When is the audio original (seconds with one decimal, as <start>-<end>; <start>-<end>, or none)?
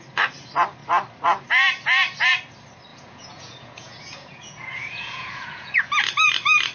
0.0-2.9; 5.8-6.7